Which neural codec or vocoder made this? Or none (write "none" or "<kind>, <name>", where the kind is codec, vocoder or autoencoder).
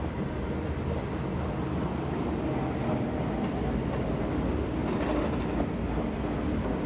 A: none